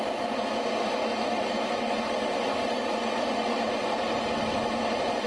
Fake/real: real